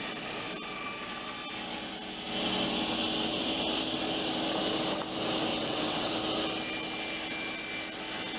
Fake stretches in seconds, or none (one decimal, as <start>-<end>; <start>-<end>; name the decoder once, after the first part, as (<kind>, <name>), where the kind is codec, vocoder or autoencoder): 5.5-6.1 (vocoder, WaveNeXt)